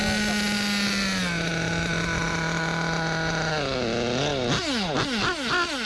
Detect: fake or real real